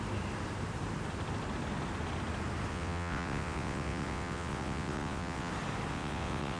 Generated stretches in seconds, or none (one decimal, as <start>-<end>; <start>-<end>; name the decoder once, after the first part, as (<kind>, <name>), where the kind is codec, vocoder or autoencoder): 2.7-5.5 (vocoder, WaveNeXt); 5.9-6.6